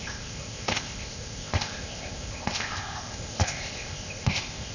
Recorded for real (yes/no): no